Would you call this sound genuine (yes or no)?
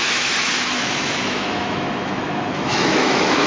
no